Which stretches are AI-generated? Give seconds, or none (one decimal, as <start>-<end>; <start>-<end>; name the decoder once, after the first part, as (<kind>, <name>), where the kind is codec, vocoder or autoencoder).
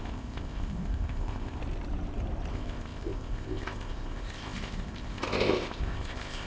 0.0-1.6 (codec, ZipCodec); 2.5-6.5